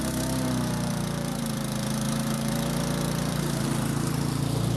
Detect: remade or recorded remade